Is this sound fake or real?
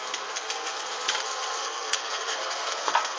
fake